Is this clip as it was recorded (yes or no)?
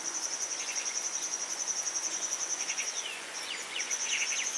no